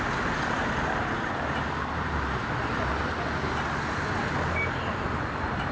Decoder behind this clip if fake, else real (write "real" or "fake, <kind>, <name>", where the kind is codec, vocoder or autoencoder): real